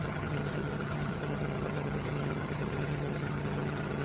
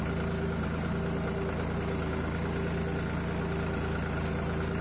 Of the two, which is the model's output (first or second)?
first